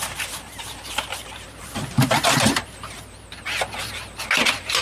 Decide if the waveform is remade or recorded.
recorded